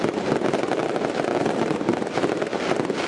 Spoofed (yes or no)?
no